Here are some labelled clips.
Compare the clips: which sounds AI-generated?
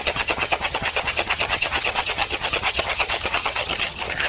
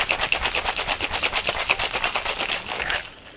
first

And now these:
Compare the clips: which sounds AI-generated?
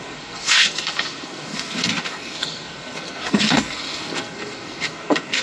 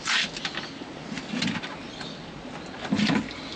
first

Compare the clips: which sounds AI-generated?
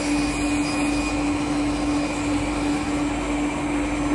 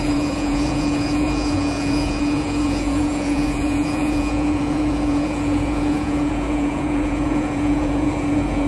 second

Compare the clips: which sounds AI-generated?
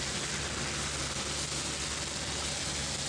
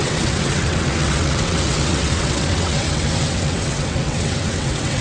second